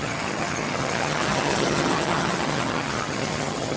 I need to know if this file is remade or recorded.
remade